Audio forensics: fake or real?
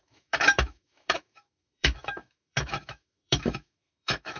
fake